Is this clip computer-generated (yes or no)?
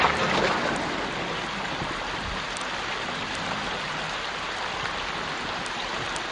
no